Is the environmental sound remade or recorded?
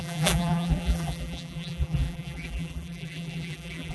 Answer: remade